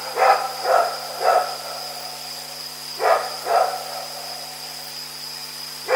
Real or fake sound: fake